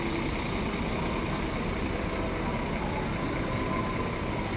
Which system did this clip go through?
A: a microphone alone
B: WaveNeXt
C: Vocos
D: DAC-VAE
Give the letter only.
A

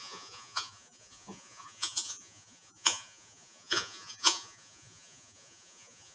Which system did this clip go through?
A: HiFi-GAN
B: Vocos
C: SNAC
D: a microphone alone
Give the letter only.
B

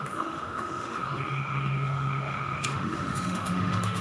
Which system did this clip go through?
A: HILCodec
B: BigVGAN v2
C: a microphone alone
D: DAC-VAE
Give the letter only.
D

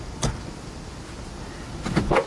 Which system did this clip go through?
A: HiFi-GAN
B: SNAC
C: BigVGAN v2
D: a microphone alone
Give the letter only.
D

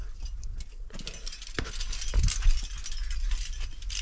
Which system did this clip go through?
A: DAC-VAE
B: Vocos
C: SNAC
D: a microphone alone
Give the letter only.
D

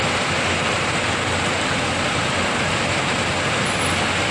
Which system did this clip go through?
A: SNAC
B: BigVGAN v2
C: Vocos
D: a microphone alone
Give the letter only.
D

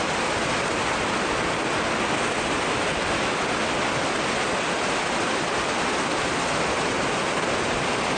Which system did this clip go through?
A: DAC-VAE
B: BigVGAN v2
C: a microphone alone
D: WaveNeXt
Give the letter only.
C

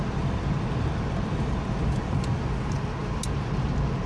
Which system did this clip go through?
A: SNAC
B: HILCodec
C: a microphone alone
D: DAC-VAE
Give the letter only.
C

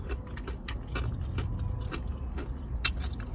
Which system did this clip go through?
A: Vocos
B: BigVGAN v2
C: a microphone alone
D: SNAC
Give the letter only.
C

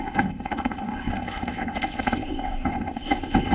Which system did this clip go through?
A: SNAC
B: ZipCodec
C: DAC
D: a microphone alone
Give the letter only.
B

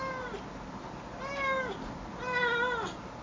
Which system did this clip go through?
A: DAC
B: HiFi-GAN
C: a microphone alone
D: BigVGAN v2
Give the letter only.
C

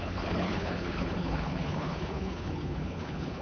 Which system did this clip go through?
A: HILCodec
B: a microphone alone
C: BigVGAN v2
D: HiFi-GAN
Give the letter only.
A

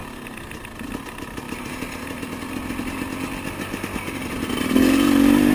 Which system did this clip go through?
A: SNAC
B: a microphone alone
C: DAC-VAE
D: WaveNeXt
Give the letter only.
B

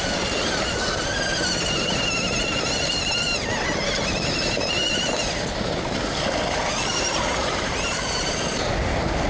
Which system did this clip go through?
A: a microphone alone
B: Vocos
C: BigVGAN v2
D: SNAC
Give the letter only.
C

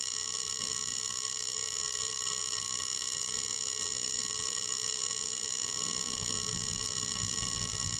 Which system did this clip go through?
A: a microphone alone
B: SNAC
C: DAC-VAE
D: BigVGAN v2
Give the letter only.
D